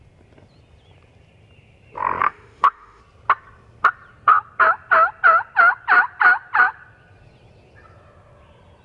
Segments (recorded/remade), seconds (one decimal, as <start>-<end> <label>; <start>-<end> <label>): 0.0-2.2 recorded; 2.2-3.0 remade; 3.0-8.8 recorded